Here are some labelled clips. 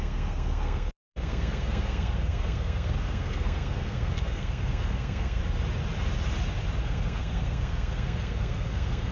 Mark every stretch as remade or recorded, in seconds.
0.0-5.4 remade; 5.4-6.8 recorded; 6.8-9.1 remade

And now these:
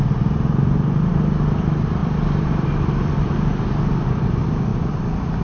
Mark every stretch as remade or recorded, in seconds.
0.0-2.0 recorded; 2.0-3.3 remade; 3.3-4.7 recorded; 4.7-5.4 remade

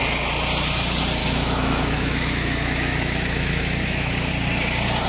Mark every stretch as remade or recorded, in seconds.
0.0-1.2 recorded; 1.2-4.3 remade; 4.3-5.1 recorded

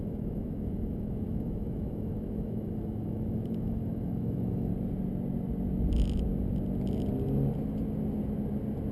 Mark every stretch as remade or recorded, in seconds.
0.0-4.7 remade; 4.7-8.9 recorded

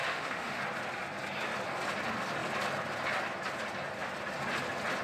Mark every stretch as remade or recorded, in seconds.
0.0-0.6 remade; 0.6-5.0 recorded

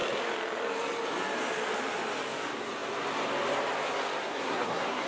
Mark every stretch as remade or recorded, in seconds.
0.0-4.2 recorded; 4.2-5.1 remade

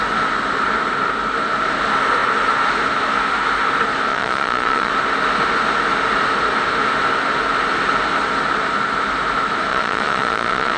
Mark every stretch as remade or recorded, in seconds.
0.0-4.1 recorded; 4.1-4.9 remade; 4.9-9.7 recorded; 9.7-10.8 remade